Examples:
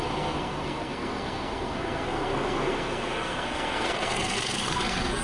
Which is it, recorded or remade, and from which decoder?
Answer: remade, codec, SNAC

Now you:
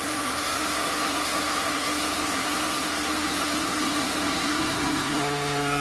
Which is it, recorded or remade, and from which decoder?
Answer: remade, codec, SNAC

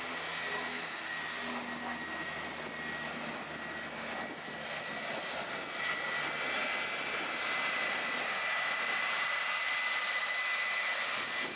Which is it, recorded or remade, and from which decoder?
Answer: recorded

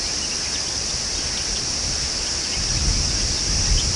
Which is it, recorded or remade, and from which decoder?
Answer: recorded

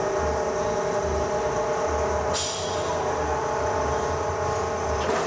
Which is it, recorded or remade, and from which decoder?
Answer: recorded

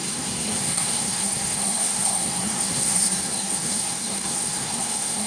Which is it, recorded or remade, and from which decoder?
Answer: remade, codec, SNAC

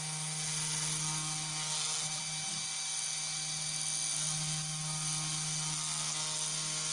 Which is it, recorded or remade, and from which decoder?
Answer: recorded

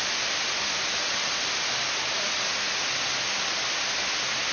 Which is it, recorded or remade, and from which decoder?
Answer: recorded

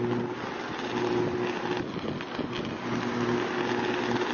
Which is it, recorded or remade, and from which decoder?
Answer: recorded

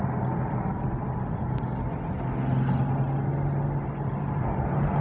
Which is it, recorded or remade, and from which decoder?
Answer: recorded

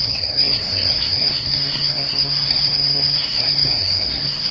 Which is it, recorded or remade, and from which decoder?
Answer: remade, codec, SNAC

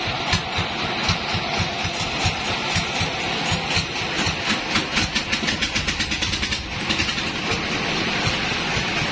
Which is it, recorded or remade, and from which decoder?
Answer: recorded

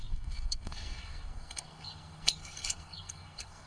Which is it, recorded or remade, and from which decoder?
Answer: remade, codec, SNAC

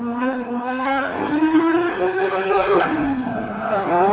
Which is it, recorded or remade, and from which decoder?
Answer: remade, codec, SNAC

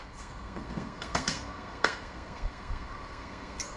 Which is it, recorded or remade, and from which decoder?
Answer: remade, codec, SNAC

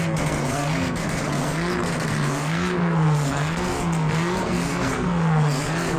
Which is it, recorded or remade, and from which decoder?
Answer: remade, codec, SNAC